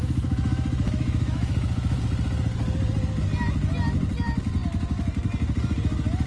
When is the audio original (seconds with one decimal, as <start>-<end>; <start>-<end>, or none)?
2.0-6.3